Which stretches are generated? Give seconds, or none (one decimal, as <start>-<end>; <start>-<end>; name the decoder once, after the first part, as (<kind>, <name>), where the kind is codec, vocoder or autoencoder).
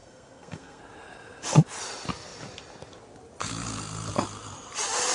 0.0-0.8 (codec, SNAC)